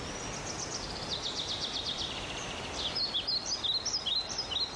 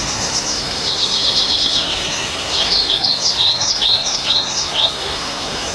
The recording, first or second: first